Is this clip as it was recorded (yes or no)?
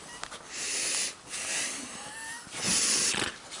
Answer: yes